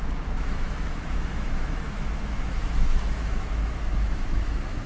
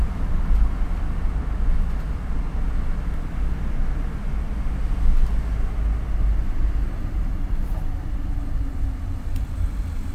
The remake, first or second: first